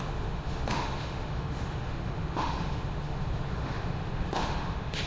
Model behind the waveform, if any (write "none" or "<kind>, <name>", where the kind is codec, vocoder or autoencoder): autoencoder, DAC-VAE